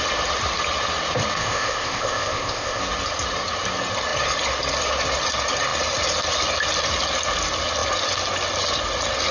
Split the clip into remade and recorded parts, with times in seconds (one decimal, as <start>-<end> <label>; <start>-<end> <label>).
0.0-1.4 recorded; 1.4-2.8 remade; 2.8-9.3 recorded

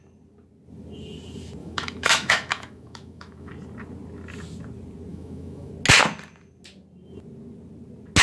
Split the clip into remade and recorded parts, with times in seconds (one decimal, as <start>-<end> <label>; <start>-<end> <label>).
0.0-1.6 recorded; 1.6-3.5 remade; 3.5-5.1 recorded; 5.1-5.7 remade; 5.7-8.2 recorded

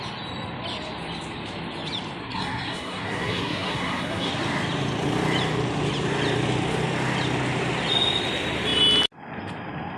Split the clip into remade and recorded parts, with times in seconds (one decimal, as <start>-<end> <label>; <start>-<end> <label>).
0.0-2.2 recorded; 2.2-4.3 remade; 4.3-10.0 recorded